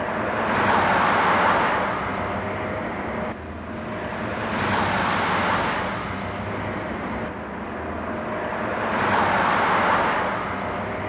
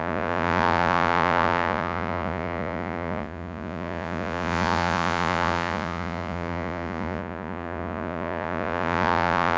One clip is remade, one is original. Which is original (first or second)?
first